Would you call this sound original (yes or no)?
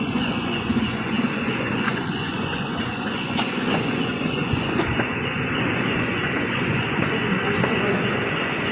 no